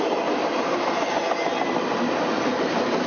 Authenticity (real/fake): fake